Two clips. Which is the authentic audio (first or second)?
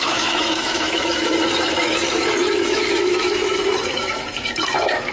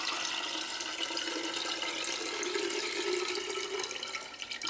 second